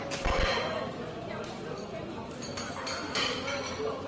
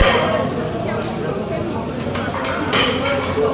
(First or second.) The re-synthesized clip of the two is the first